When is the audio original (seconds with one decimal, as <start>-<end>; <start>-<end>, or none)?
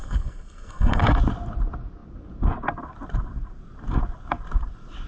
1.0-5.1